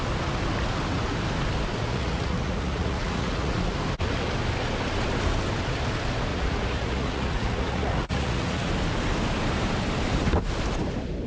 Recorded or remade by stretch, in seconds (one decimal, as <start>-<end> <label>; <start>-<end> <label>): 0.0-1.7 recorded; 1.7-3.7 remade; 3.7-6.3 recorded; 6.3-8.7 remade; 8.7-11.3 recorded